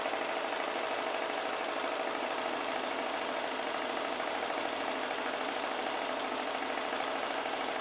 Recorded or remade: recorded